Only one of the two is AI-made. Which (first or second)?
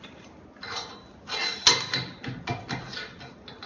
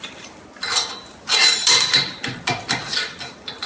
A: second